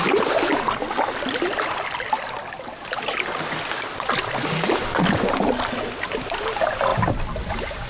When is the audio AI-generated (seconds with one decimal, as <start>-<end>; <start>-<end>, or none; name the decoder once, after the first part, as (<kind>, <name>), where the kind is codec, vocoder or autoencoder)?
none